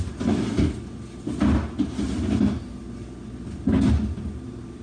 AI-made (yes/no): no